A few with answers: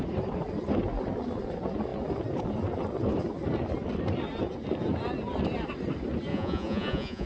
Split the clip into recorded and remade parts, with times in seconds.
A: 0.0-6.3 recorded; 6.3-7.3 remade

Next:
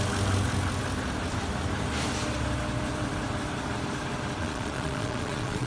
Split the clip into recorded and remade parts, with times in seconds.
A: 0.0-4.4 recorded; 4.4-5.7 remade

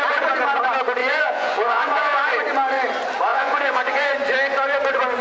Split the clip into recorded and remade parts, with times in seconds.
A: 0.0-1.0 recorded; 1.0-2.3 remade; 2.3-3.3 recorded; 3.3-4.1 remade; 4.1-5.2 recorded

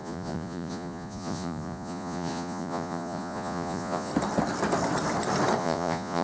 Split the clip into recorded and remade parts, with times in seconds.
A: 0.0-4.1 remade; 4.1-5.6 recorded; 5.6-6.2 remade

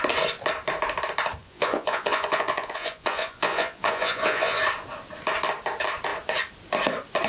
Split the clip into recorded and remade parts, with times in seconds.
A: 0.0-1.4 recorded; 1.4-4.6 remade; 4.6-7.3 recorded

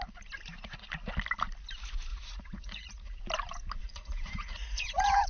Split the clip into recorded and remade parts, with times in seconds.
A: 0.0-2.1 recorded; 2.1-3.2 remade; 3.2-3.8 recorded; 3.8-5.3 remade

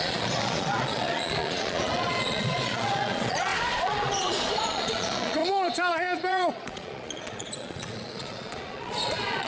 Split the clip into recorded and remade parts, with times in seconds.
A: 0.0-9.5 remade